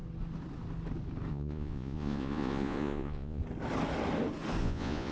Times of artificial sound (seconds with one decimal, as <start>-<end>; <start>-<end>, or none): 1.3-3.4; 4.6-5.1

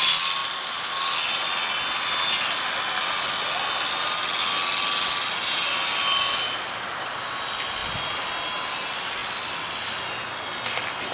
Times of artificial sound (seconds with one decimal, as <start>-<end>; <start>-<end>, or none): none

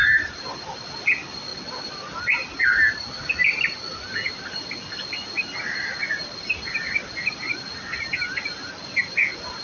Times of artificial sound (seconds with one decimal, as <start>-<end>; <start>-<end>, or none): none

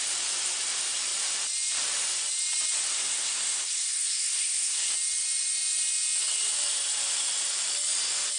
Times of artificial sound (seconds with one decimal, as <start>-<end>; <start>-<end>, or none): 2.9-4.9

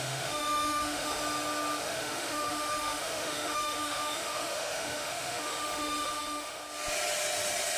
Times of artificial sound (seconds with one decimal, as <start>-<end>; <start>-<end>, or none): 0.0-1.2; 1.8-6.6